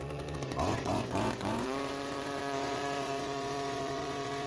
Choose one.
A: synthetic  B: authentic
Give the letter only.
A